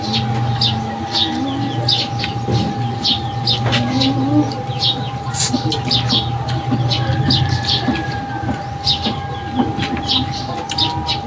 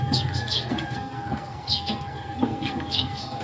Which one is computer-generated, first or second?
second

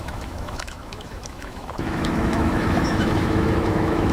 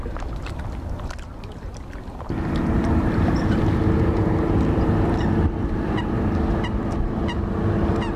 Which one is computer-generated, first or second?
first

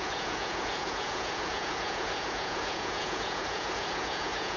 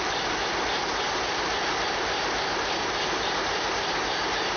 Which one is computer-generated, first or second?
first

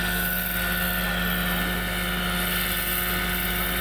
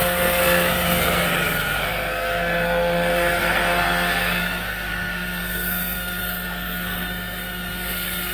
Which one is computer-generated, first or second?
second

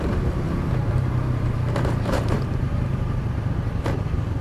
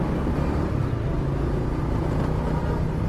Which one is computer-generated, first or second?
first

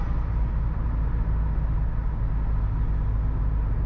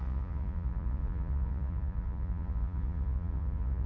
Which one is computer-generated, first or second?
second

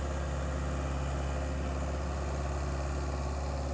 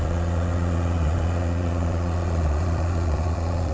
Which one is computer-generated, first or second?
second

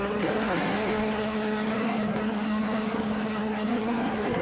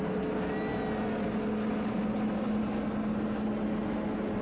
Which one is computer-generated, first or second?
first